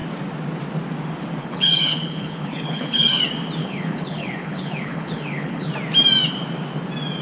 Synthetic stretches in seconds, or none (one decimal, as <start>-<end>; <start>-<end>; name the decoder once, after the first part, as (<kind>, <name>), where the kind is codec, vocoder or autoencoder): 1.4-3.2 (codec, HILCodec); 3.6-5.7